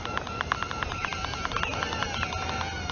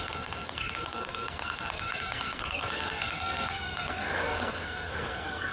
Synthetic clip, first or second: second